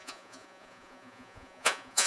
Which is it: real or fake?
fake